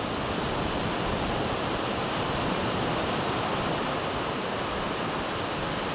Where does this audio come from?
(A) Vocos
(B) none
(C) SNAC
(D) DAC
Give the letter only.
B